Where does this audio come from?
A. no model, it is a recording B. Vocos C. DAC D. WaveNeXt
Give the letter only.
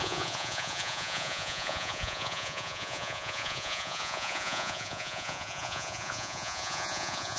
B